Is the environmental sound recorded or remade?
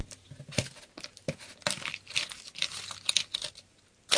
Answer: recorded